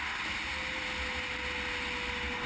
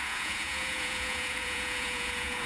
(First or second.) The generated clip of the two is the second